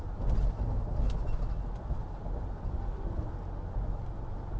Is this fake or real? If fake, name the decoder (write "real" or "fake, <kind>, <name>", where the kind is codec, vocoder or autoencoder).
real